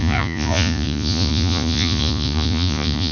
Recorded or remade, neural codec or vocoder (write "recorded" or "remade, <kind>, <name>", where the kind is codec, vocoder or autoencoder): remade, vocoder, Vocos